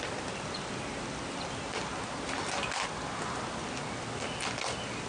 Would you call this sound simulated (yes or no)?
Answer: no